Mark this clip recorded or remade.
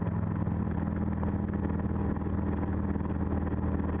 recorded